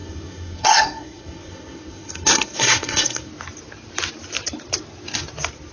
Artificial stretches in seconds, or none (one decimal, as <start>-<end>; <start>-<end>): 0.0-3.3